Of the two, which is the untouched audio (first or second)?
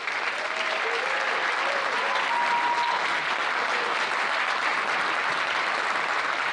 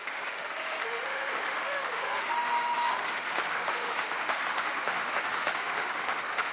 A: first